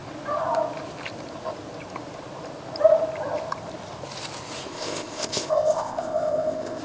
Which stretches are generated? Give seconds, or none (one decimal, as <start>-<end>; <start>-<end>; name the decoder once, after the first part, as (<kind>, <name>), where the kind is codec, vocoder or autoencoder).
4.7-6.8 (codec, ZipCodec)

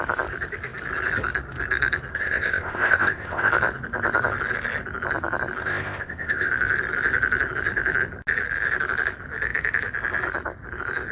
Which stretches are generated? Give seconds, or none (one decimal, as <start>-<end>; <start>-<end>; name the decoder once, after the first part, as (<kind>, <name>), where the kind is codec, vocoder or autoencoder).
2.1-3.5 (codec, ZipCodec); 5.6-6.5

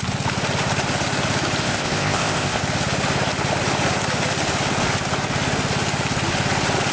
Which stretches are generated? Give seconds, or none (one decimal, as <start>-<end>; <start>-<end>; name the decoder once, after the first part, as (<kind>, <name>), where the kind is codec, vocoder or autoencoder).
1.6-2.6 (codec, ZipCodec)

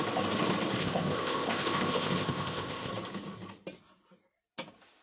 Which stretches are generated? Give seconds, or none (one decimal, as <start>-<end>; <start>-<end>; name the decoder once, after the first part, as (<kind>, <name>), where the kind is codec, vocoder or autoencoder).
0.8-2.9 (codec, ZipCodec)